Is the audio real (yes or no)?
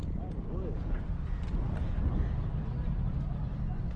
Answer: yes